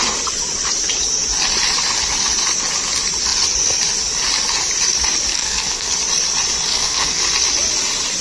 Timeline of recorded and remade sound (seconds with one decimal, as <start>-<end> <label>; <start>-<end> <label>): 0.0-5.3 recorded; 5.3-5.9 remade; 5.9-6.7 recorded; 6.7-7.2 remade; 7.2-8.2 recorded